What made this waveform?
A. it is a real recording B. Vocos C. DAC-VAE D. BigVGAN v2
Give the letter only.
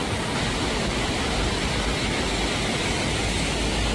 A